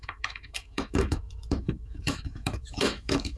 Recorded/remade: remade